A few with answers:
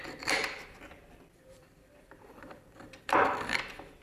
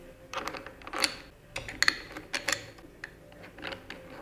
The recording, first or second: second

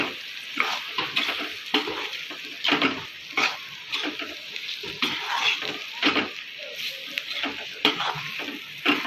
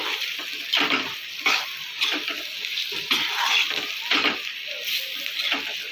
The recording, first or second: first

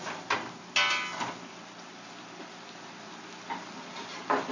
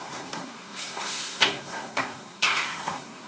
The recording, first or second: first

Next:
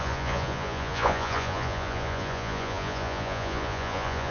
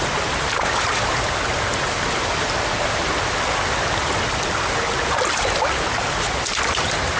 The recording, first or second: second